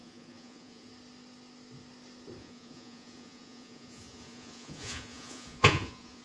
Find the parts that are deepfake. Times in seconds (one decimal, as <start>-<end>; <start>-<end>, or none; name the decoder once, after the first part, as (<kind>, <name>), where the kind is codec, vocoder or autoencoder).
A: 0.0-0.9 (vocoder, Vocos); 2.4-6.2